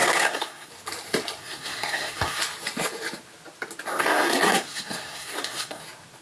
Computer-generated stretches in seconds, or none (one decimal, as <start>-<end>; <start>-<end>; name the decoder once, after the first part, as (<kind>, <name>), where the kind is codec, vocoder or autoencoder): 0.0-0.7 (codec, SNAC); 1.4-2.4; 3.9-5.8